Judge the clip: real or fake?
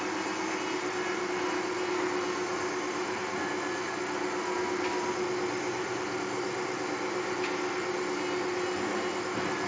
real